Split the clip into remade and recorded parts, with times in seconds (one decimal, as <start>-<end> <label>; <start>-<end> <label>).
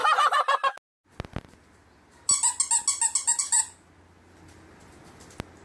0.0-5.6 recorded